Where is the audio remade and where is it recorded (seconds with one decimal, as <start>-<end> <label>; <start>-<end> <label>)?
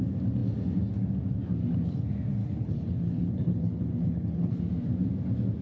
0.0-2.4 recorded; 2.4-4.6 remade; 4.6-5.6 recorded